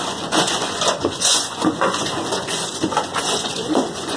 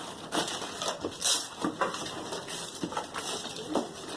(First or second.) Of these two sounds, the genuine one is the second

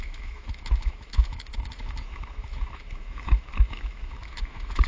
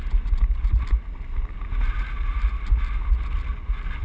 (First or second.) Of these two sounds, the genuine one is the second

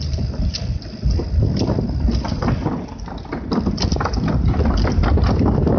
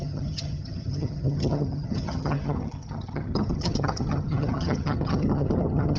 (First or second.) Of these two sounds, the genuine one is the first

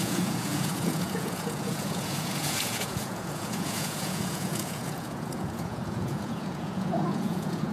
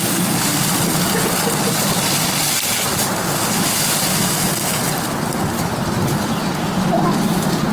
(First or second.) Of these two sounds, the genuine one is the second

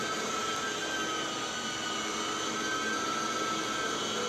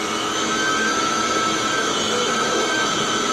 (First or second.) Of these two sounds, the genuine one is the first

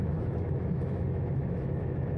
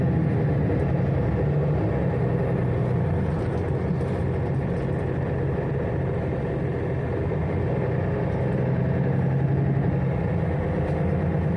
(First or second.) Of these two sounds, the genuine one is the second